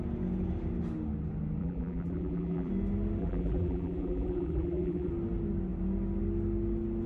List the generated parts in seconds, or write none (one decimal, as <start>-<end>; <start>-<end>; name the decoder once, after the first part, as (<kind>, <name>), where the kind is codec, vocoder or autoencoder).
1.6-2.7 (vocoder, BigVGAN v2); 3.2-5.1